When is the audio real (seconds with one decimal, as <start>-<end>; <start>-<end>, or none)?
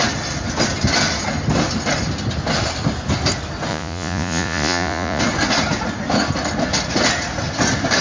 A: 0.0-3.7; 5.2-8.0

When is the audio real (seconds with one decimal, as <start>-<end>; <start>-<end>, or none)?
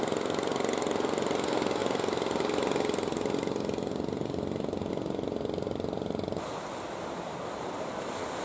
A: 0.0-8.4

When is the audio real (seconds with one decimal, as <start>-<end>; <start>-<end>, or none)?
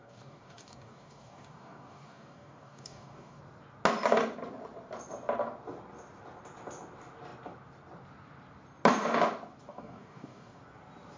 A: 3.4-9.7; 10.6-11.2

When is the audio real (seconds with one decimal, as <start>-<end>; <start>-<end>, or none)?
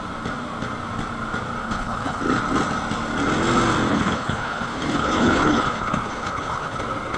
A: 0.0-1.6; 2.2-3.9; 6.8-7.2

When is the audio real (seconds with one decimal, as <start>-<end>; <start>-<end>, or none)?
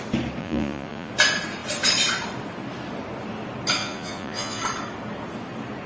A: 0.0-0.4; 1.1-3.8; 4.6-5.9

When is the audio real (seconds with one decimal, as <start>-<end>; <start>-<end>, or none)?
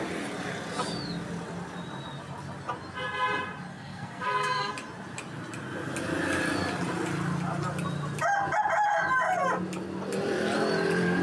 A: 0.0-3.7; 4.7-11.2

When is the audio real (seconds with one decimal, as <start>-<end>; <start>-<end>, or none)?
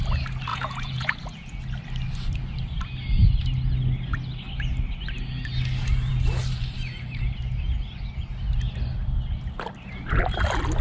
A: 0.0-0.5; 1.6-10.8